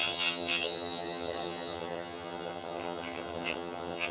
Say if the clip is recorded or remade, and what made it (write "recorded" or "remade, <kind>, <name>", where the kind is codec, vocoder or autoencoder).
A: remade, vocoder, HiFi-GAN